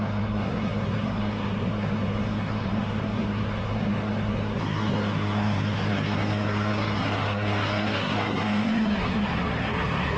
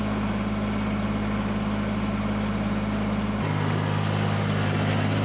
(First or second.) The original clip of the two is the second